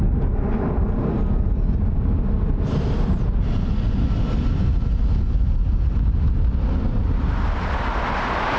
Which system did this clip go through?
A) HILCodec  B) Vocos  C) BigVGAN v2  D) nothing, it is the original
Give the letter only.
D